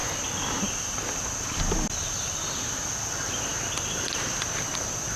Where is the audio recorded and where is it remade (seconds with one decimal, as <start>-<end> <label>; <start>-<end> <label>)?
0.0-5.2 recorded